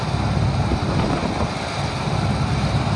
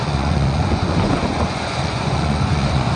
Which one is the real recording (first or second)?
first